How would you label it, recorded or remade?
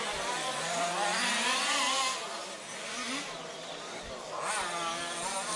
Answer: recorded